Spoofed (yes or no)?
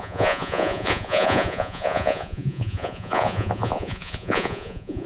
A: yes